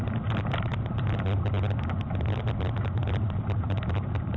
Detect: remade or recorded remade